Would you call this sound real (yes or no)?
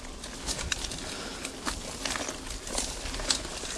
yes